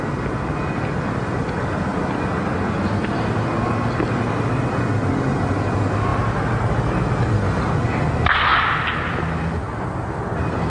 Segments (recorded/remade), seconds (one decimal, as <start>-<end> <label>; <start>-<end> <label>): 0.0-10.7 recorded